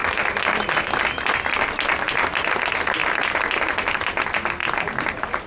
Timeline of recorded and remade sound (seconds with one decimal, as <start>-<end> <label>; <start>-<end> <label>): 0.0-5.5 recorded